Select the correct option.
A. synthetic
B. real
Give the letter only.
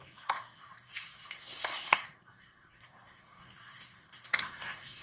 A